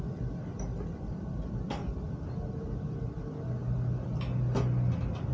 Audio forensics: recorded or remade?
recorded